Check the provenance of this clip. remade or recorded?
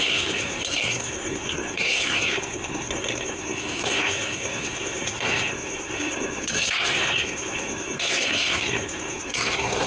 remade